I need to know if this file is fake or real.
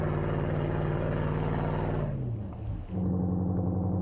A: real